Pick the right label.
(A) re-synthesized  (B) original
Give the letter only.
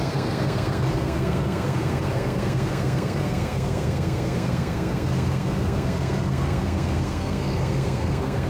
A